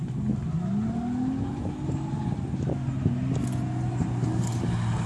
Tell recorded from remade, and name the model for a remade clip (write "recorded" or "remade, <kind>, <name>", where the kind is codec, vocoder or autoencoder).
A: recorded